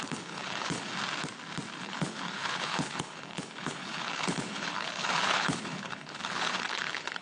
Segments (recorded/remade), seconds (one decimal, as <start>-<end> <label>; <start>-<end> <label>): 0.0-0.9 remade; 0.9-1.8 recorded; 1.8-7.2 remade